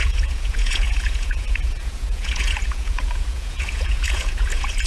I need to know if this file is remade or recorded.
remade